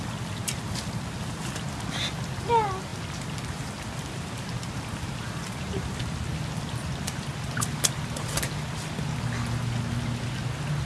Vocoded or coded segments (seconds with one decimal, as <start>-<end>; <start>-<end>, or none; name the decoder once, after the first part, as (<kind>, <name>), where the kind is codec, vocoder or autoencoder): none